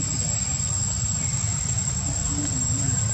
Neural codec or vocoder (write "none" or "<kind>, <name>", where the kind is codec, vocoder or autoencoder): none